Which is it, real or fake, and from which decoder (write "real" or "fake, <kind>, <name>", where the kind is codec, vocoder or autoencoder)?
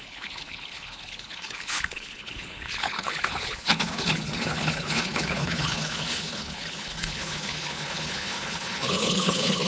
fake, codec, HILCodec